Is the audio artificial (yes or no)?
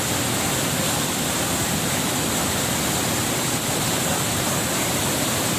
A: no